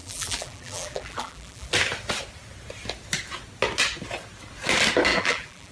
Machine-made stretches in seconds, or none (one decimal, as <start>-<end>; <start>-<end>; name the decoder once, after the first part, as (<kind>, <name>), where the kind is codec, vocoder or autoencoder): 0.0-1.7 (vocoder, BigVGAN v2); 5.1-5.7